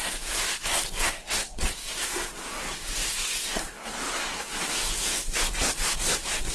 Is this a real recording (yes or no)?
no